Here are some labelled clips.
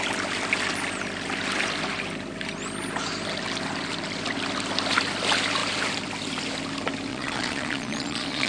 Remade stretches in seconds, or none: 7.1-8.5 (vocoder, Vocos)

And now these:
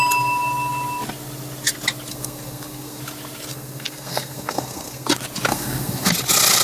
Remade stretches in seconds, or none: 2.1-3.0 (codec, SNAC); 3.5-5.1; 5.5-6.1

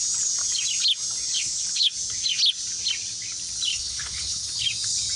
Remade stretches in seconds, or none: 1.3-1.9 (codec, HILCodec); 3.7-4.6

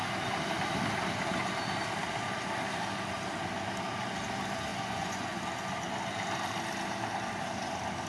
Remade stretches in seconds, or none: 4.7-5.4 (vocoder, Vocos)

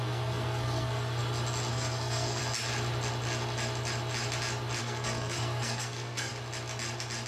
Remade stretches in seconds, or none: 0.0-1.2 (codec, SNAC); 1.7-2.4; 4.8-6.3